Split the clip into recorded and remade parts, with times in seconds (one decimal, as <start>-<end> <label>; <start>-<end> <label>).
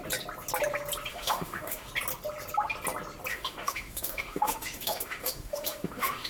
0.0-1.1 recorded; 1.1-1.9 remade; 1.9-3.3 recorded; 3.3-6.3 remade